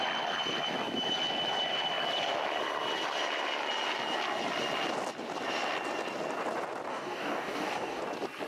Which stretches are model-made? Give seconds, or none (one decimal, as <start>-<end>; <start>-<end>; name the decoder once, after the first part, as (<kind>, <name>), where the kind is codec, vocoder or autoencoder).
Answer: 6.9-8.0 (codec, DAC)